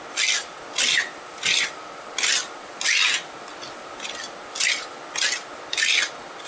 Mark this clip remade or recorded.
recorded